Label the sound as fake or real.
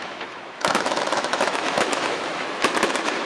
fake